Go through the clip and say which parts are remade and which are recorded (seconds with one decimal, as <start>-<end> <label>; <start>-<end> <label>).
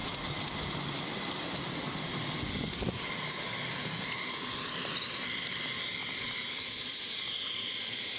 0.0-4.5 recorded; 4.5-6.0 remade; 6.0-6.5 recorded; 6.5-8.2 remade